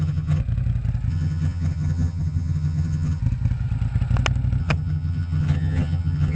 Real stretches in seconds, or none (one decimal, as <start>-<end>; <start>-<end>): 0.4-1.1; 3.2-4.6